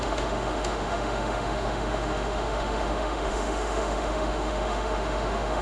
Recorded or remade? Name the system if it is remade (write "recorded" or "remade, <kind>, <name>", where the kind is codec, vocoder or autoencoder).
remade, autoencoder, DAC-VAE